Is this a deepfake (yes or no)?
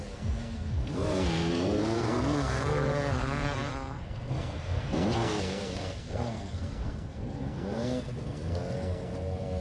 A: yes